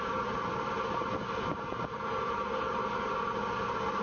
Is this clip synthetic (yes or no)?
no